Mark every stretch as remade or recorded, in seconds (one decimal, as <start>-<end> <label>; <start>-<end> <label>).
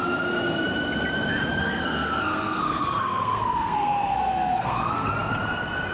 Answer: 0.0-1.6 recorded; 1.6-5.1 remade; 5.1-5.9 recorded